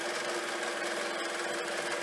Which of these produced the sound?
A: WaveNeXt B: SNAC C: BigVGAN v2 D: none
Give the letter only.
D